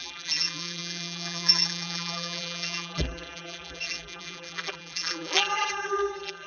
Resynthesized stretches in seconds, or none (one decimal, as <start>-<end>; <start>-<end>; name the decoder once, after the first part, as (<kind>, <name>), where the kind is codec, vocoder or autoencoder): 0.0-6.5 (vocoder, BigVGAN v2)